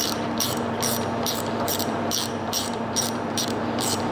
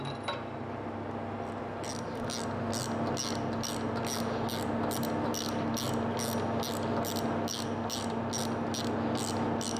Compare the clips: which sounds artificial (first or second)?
first